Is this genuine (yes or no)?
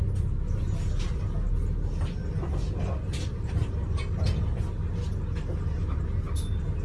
yes